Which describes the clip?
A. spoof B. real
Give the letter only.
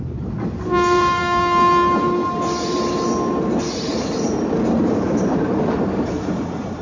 A